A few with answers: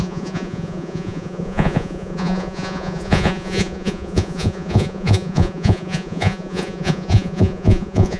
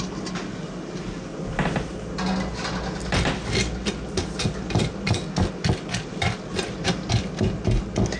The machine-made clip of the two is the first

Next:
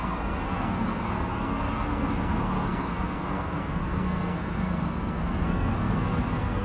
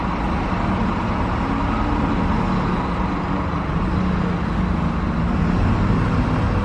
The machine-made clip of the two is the first